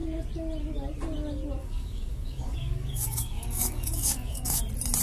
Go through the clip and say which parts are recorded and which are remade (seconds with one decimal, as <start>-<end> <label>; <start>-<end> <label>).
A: 0.0-1.6 recorded; 1.6-4.6 remade; 4.6-5.0 recorded